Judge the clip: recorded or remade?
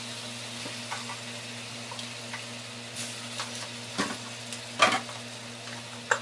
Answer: recorded